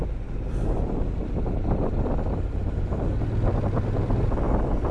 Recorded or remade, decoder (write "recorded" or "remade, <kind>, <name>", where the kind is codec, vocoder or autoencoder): recorded